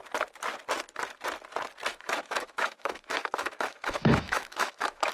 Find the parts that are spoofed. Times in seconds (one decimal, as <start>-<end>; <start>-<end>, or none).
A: 1.9-5.1